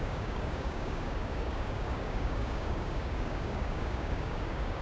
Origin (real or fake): fake